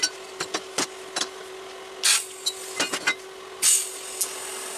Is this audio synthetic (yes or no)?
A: no